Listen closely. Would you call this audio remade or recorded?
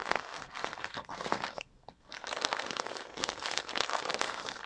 remade